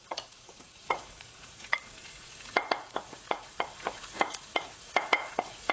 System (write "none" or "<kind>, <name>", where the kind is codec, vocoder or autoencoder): vocoder, Vocos